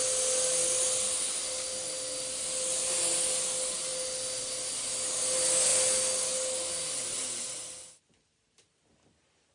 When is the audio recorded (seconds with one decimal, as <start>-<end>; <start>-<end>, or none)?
0.0-9.5